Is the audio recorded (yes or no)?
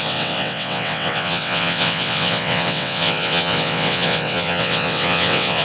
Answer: no